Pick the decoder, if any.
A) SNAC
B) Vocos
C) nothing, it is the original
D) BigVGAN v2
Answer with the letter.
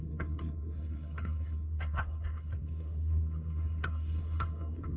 A